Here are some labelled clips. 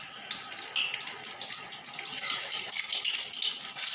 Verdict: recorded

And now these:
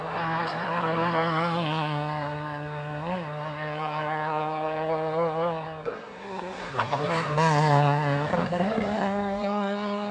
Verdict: remade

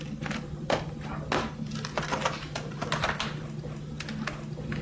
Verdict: recorded